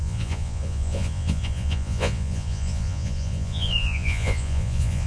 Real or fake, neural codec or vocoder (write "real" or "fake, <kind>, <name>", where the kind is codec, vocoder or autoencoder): fake, vocoder, Vocos